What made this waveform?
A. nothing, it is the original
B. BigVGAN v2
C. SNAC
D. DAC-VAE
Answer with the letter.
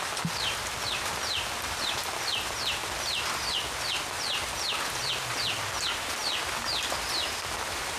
A